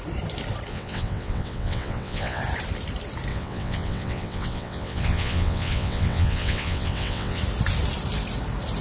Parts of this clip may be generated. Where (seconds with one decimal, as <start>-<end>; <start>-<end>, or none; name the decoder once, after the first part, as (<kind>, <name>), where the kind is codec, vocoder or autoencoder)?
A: 0.7-2.4 (vocoder, WaveNeXt); 3.3-7.4